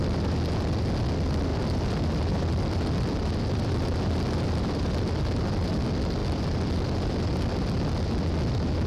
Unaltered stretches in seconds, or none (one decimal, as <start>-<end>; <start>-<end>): 0.0-8.9